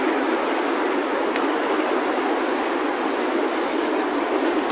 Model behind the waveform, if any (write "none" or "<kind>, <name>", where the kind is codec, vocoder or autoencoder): none